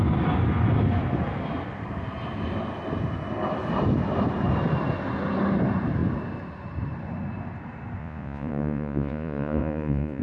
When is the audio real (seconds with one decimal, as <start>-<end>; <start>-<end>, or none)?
0.0-8.0